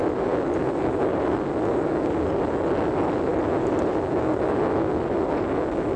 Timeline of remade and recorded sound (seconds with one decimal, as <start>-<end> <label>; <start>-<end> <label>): 0.0-6.0 recorded